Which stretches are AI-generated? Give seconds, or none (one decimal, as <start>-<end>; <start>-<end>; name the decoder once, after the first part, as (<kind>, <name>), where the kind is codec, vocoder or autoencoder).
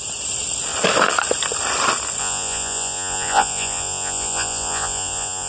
2.2-5.5 (vocoder, Vocos)